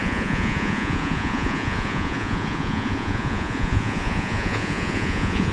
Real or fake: fake